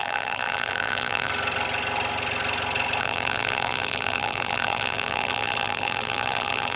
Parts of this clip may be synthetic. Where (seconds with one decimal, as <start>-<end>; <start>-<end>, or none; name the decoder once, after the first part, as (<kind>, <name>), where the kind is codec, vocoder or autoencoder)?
0.0-1.3 (vocoder, BigVGAN v2); 3.0-6.8